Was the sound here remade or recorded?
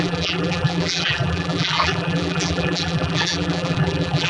remade